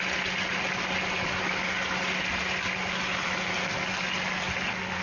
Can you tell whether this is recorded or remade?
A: recorded